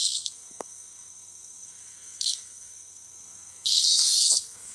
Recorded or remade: remade